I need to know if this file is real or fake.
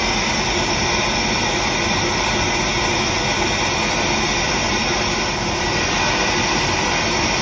real